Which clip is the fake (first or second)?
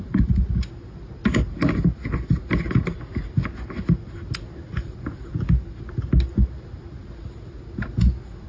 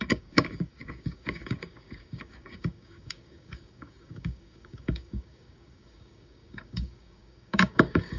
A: second